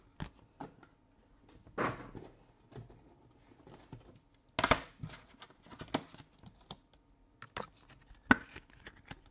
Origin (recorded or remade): recorded